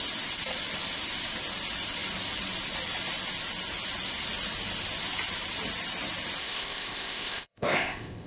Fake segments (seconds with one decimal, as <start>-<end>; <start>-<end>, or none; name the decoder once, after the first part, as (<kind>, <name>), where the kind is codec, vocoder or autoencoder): 6.4-8.3 (codec, ZipCodec)